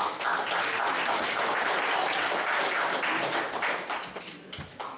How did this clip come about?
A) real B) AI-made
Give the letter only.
A